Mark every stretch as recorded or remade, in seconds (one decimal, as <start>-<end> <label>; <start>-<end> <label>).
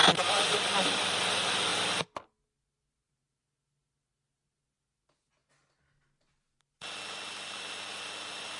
0.0-8.6 recorded